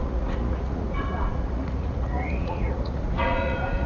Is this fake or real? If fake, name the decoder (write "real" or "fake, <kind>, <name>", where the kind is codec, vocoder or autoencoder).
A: fake, vocoder, Vocos